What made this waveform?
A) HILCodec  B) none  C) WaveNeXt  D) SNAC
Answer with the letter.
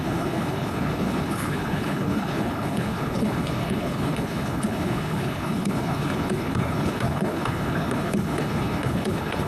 A